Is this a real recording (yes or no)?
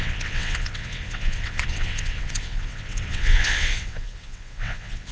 no